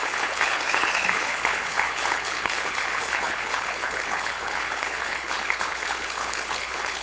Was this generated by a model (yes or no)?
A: yes